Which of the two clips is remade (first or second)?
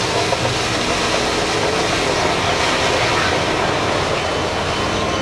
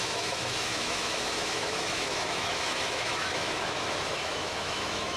second